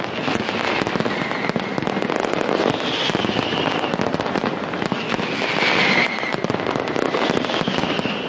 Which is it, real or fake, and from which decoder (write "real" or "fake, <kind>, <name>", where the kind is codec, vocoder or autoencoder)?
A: real